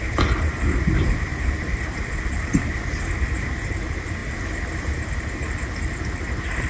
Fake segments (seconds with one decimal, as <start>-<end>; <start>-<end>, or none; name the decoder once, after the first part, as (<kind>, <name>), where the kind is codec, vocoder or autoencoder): none